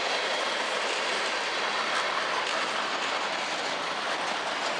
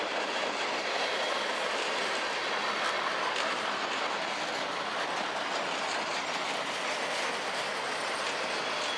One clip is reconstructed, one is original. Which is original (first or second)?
second